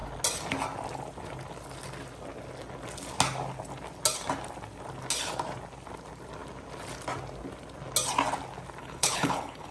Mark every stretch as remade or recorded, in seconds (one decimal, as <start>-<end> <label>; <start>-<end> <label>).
0.0-8.8 recorded; 8.8-9.7 remade